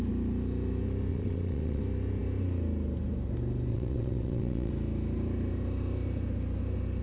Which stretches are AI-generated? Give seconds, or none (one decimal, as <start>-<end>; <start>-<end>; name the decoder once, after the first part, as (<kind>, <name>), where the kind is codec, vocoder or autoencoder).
1.1-1.8 (vocoder, WaveNeXt); 3.7-4.7